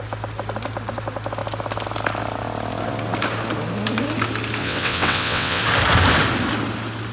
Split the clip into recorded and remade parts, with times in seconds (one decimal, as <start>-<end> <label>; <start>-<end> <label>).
0.0-4.6 recorded; 4.6-5.6 remade; 5.6-7.1 recorded